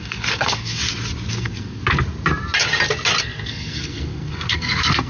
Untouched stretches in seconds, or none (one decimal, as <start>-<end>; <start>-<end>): 0.8-1.3; 1.8-3.2